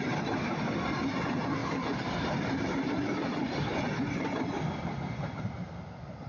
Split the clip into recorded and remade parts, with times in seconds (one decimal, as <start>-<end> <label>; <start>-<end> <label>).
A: 0.0-6.3 recorded